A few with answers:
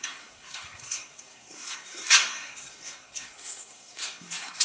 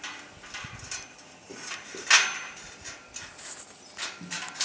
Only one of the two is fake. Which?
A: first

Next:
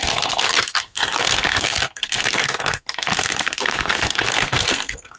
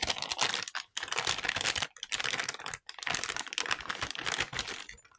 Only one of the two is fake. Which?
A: first